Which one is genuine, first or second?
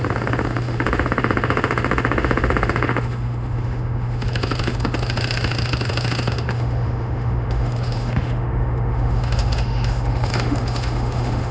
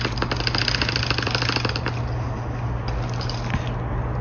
second